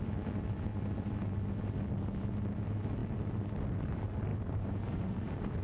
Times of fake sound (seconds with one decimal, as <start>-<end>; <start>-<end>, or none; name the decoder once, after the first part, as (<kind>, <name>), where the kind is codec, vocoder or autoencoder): 4.3-5.6 (vocoder, BigVGAN v2)